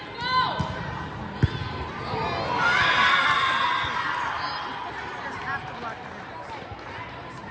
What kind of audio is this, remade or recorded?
recorded